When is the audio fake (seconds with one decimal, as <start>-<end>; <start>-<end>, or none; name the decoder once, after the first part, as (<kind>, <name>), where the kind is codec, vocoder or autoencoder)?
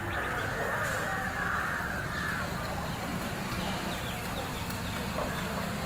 1.1-2.0 (vocoder, BigVGAN v2); 3.1-4.0